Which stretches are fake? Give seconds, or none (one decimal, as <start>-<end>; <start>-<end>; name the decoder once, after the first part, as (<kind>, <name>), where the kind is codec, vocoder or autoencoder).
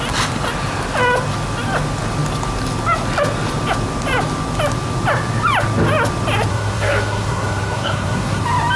6.5-8.4 (codec, SNAC)